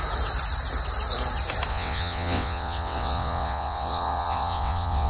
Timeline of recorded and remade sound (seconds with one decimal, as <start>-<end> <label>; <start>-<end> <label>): 0.0-1.7 recorded; 1.7-5.1 remade